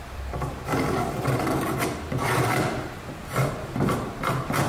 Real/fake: fake